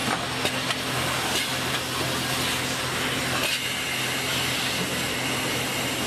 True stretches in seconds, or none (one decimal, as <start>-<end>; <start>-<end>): 0.0-6.1